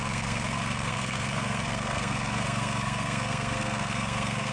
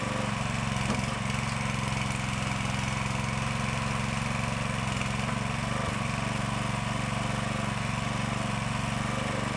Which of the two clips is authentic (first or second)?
second